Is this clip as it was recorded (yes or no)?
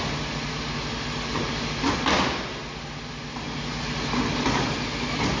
yes